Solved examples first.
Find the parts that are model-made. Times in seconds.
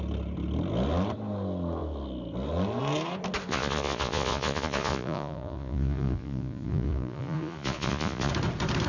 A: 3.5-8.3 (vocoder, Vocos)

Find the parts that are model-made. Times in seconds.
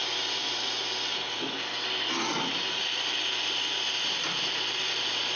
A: none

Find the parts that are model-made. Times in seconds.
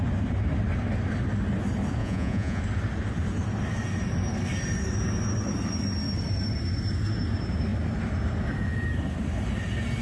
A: 2.0-2.6 (vocoder, Vocos)